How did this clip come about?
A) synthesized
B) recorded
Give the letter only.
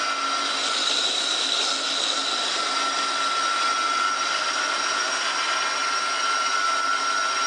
B